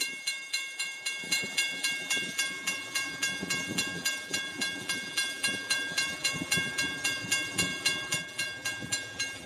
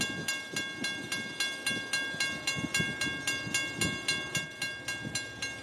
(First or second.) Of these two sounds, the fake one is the first